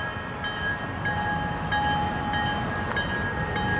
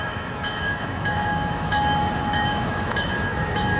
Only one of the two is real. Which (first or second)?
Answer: first